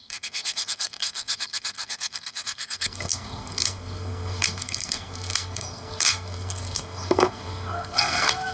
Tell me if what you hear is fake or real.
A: fake